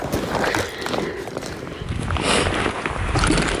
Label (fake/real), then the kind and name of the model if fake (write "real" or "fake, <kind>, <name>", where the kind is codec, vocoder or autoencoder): real